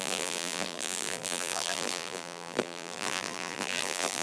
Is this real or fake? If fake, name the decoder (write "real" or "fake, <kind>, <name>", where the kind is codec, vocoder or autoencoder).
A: fake, vocoder, BigVGAN v2